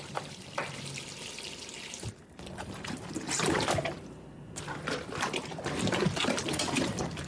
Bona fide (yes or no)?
no